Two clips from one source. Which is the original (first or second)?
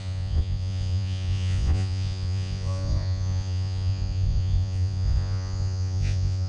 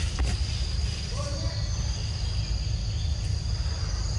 second